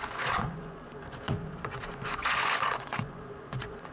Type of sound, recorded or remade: remade